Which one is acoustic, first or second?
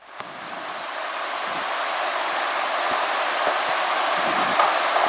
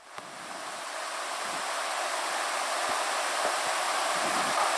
second